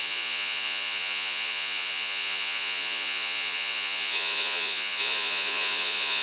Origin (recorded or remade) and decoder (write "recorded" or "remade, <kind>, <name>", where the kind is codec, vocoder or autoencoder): remade, vocoder, Vocos